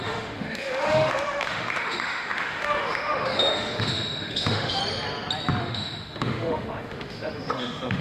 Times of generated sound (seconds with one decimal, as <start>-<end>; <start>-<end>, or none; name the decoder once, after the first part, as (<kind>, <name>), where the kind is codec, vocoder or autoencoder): 0.0-4.8 (autoencoder, DAC-VAE); 5.6-8.0